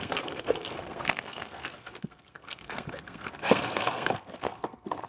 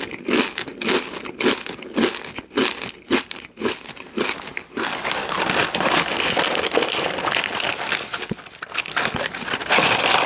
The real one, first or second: second